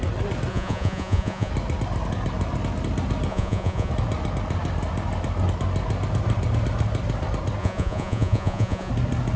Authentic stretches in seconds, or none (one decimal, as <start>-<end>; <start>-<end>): 0.0-0.5; 1.5-3.3; 3.9-7.6; 8.9-9.4